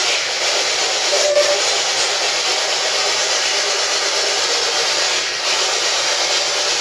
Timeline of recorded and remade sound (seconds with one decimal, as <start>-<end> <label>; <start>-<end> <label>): 0.0-1.5 remade; 1.5-6.8 recorded

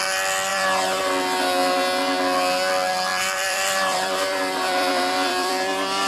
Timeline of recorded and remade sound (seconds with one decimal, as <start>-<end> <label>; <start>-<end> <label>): 0.0-0.5 recorded; 0.5-1.0 remade; 1.0-3.1 recorded; 3.1-6.1 remade

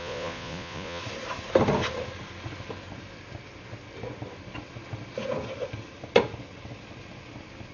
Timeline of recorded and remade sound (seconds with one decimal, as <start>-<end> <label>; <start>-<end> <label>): 0.0-1.0 remade; 1.0-7.7 recorded

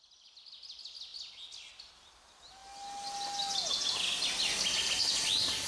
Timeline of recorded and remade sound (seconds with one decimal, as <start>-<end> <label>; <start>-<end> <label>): 0.0-5.7 recorded

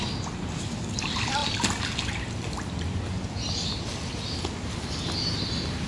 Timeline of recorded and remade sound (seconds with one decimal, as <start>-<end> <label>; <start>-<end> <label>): 0.0-5.9 recorded

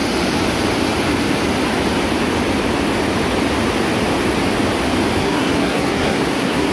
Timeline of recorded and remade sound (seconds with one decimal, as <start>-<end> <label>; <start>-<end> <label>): 0.0-5.2 recorded; 5.2-6.7 remade

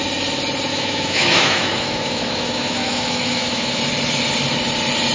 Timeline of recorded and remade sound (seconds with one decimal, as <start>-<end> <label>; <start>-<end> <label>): 0.0-0.7 recorded; 0.7-3.8 remade; 3.8-5.1 recorded

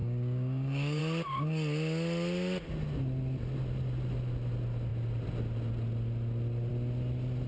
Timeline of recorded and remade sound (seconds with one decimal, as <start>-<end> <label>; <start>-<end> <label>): 0.0-1.0 remade; 1.0-7.5 recorded